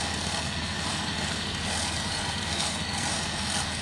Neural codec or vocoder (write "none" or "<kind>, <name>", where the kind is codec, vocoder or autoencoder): codec, SNAC